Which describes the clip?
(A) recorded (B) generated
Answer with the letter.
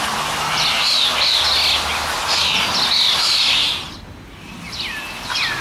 A